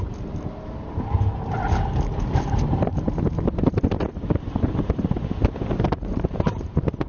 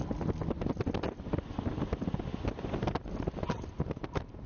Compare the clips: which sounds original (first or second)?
second